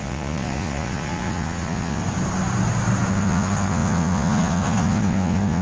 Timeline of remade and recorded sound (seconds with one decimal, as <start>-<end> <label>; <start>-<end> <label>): 0.0-2.0 remade; 2.0-3.1 recorded; 3.1-5.6 remade